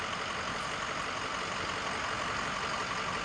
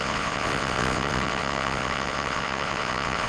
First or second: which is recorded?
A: first